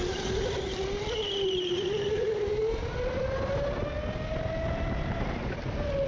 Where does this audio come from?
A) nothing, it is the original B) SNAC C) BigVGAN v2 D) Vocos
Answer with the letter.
A